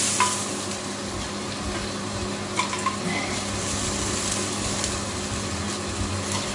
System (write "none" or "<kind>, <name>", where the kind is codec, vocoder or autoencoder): none